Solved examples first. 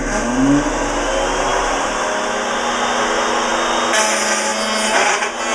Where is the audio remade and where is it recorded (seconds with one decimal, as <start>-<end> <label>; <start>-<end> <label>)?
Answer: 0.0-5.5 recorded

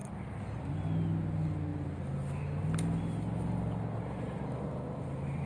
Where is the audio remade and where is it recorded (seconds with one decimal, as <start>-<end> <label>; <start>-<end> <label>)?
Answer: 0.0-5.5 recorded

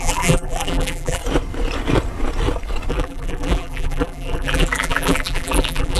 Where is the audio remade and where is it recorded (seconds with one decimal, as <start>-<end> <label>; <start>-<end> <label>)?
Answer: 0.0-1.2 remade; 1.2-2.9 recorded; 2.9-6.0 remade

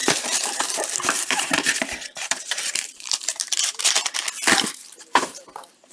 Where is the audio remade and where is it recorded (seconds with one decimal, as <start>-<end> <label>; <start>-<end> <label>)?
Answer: 0.0-4.0 remade; 4.0-4.7 recorded; 4.7-5.9 remade

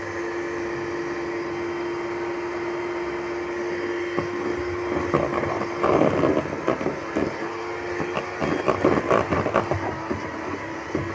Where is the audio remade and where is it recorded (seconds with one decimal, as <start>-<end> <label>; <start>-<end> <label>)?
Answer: 0.0-11.1 remade